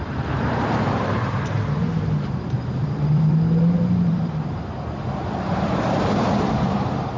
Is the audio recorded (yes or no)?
no